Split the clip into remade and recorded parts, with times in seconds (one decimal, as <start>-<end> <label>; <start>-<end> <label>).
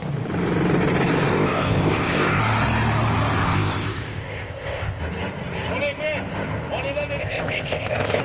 0.0-1.3 recorded; 1.3-2.4 remade; 2.4-3.4 recorded; 3.4-5.0 remade; 5.0-7.2 recorded; 7.2-8.2 remade